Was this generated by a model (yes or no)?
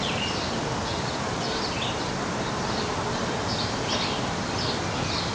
no